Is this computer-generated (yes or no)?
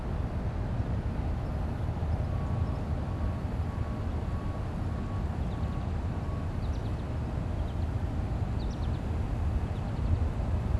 no